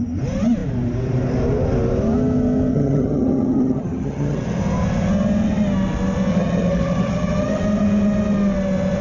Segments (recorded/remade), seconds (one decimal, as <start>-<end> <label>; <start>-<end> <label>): 0.0-2.7 recorded; 2.7-4.6 remade; 4.6-6.3 recorded; 6.3-7.6 remade; 7.6-9.0 recorded